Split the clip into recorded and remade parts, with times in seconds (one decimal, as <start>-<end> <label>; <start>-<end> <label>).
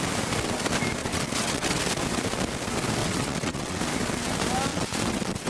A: 0.0-1.0 recorded; 1.0-1.8 remade; 1.8-3.0 recorded; 3.0-3.8 remade; 3.8-4.7 recorded; 4.7-5.5 remade